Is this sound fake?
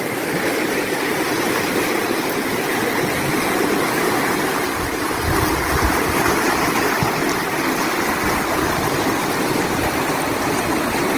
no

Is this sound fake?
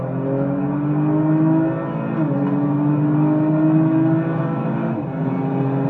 no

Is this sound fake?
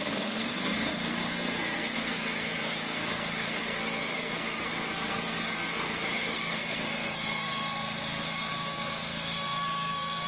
yes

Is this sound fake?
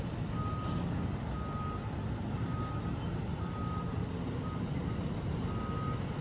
no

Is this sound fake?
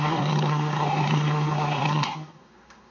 yes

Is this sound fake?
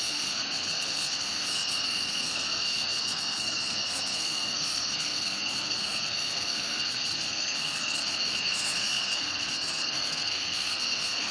yes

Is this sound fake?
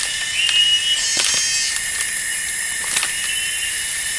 no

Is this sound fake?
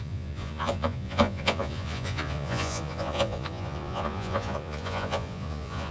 yes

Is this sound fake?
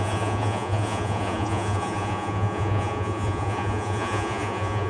yes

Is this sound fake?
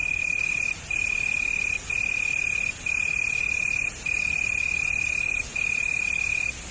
no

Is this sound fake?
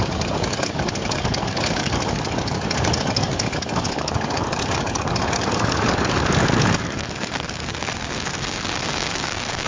yes